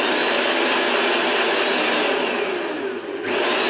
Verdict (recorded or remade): recorded